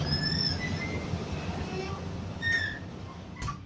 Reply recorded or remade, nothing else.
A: recorded